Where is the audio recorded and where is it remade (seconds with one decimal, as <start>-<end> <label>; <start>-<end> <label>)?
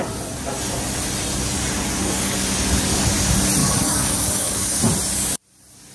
0.0-2.0 recorded; 2.0-3.1 remade; 3.1-3.6 recorded; 3.6-4.8 remade; 4.8-5.9 recorded